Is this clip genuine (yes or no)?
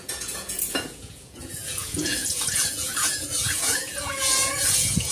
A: no